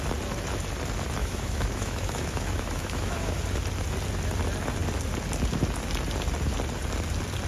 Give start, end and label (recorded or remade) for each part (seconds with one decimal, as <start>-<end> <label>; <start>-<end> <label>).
0.0-1.2 recorded; 1.2-3.4 remade; 3.4-7.5 recorded